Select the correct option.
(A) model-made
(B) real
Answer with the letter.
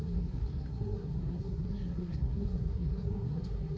A